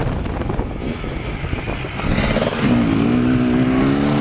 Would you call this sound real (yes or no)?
yes